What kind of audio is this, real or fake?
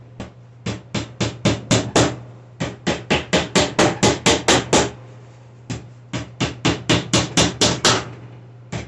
real